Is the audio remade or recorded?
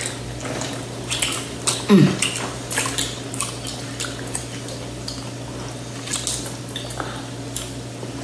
recorded